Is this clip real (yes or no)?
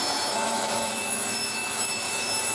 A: no